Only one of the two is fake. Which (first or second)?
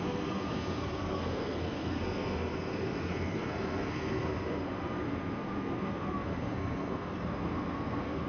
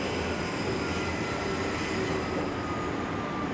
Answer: first